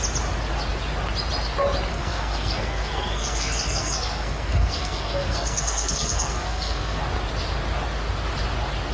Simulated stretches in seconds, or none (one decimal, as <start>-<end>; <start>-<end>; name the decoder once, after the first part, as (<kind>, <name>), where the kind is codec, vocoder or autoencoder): 1.9-7.0 (codec, SNAC)